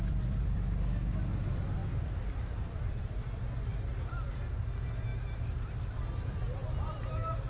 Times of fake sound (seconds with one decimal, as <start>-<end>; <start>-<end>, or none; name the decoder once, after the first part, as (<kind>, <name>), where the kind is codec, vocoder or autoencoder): 0.0-1.8 (vocoder, BigVGAN v2); 2.4-5.1; 5.6-7.5